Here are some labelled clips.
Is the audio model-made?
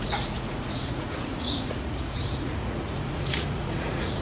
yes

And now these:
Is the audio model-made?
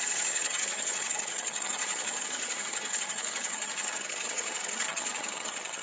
yes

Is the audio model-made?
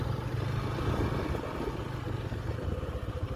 no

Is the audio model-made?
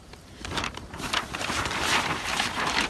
yes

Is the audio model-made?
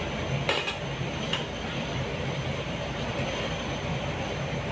no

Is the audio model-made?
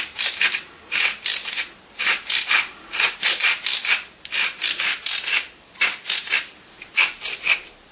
yes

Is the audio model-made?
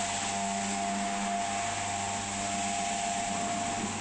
no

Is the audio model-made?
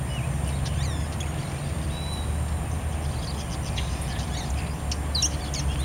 no